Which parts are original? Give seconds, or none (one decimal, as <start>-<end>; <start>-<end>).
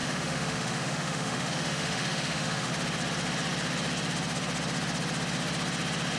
2.7-6.2